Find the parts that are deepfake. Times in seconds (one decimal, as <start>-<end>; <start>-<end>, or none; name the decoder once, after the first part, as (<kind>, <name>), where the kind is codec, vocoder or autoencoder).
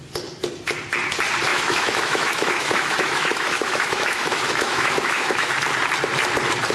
1.5-5.5 (autoencoder, DAC-VAE)